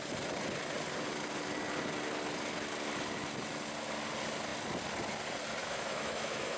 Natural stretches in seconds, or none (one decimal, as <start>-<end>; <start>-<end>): 0.0-5.6